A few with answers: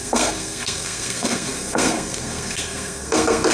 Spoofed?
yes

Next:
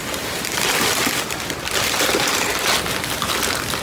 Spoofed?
no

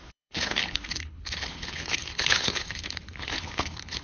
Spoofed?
yes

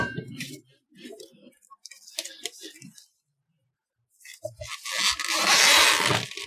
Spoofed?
no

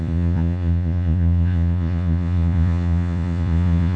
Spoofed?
yes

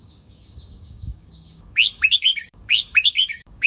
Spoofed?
yes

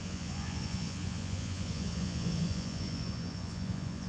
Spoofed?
yes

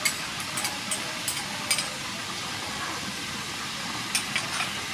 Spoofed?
no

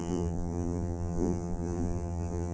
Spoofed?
yes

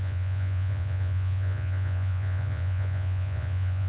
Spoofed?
yes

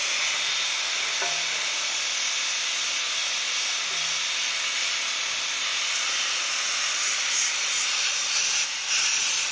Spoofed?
no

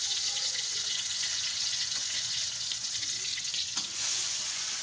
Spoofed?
yes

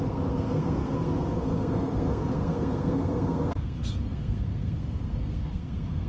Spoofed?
yes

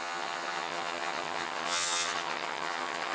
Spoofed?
yes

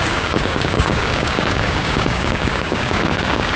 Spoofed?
yes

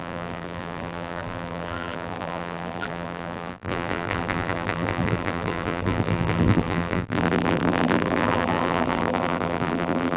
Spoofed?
yes